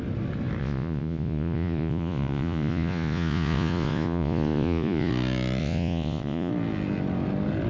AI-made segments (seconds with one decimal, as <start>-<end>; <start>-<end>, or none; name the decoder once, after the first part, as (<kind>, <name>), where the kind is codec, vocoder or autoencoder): 0.6-5.1 (vocoder, Vocos); 5.6-6.5